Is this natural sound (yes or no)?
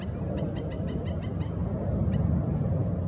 yes